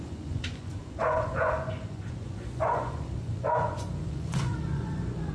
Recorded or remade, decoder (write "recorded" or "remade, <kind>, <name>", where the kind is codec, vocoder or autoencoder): remade, vocoder, Vocos